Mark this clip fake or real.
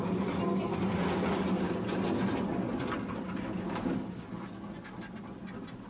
real